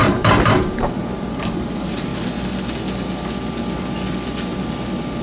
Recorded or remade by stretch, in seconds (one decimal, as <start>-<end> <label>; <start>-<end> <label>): 0.0-2.1 remade; 2.1-5.2 recorded